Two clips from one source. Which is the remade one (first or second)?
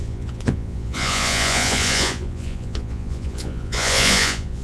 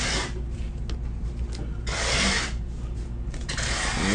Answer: first